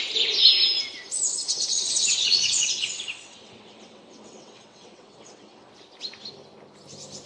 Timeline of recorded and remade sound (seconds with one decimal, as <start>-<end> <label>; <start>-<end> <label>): 0.0-1.3 recorded; 1.3-5.7 remade; 5.7-7.3 recorded

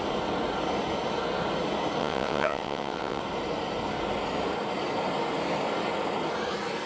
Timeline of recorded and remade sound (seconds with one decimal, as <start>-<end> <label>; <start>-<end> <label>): 0.0-2.0 recorded; 2.0-3.2 remade; 3.2-6.9 recorded

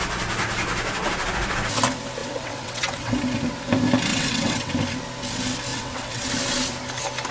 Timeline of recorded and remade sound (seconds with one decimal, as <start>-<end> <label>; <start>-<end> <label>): 0.0-2.2 recorded; 2.2-3.1 remade; 3.1-4.1 recorded; 4.1-4.7 remade; 4.7-5.7 recorded; 5.7-6.3 remade; 6.3-7.3 recorded

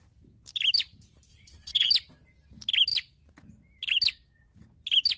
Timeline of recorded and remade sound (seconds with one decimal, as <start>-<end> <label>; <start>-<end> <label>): 0.0-1.3 recorded; 1.3-1.9 remade; 1.9-5.2 recorded